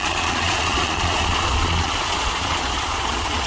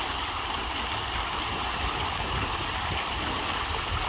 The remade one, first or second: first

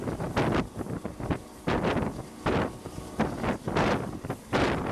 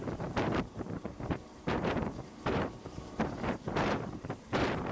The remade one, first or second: second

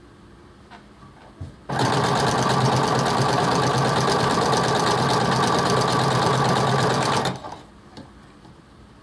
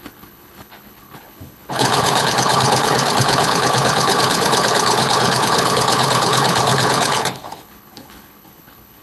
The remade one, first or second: second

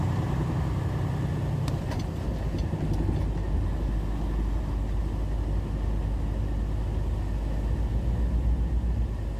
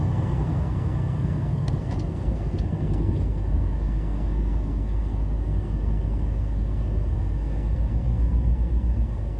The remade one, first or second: second